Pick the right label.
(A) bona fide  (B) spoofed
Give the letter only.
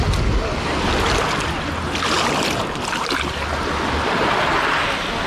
A